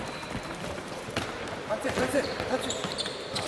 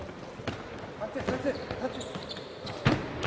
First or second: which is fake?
first